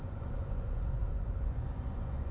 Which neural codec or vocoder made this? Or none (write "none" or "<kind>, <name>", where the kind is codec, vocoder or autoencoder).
vocoder, Vocos